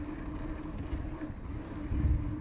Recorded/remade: recorded